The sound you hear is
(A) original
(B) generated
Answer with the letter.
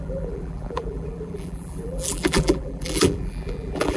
B